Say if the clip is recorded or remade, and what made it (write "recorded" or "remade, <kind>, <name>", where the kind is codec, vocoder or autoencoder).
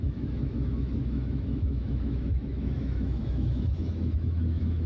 remade, autoencoder, DAC-VAE